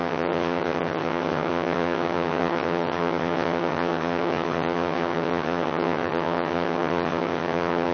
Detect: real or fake fake